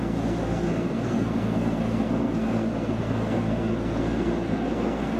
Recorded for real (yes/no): no